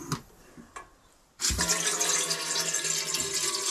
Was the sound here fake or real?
real